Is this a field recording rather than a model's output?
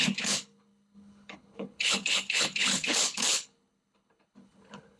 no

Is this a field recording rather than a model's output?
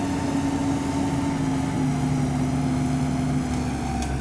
yes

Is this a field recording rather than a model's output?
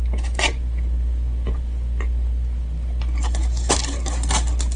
yes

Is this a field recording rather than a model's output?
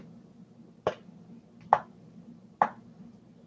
yes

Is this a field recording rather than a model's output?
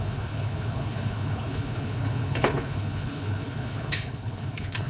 no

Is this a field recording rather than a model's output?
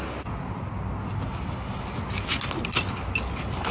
yes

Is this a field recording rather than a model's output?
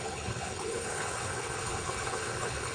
no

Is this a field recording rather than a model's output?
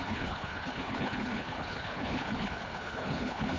no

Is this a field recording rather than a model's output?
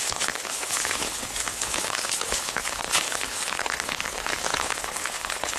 no